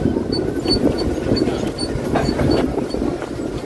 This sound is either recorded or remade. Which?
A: recorded